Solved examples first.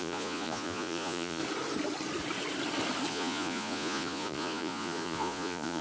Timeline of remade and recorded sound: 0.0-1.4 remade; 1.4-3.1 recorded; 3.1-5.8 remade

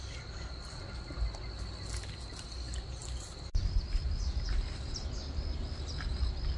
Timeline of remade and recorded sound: 0.0-6.6 recorded

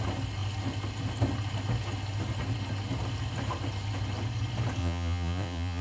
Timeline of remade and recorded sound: 0.0-4.8 recorded; 4.8-5.8 remade